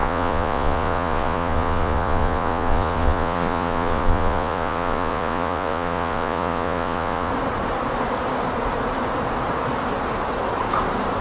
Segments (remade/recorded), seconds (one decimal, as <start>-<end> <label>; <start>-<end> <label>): 0.0-7.3 remade; 7.3-11.2 recorded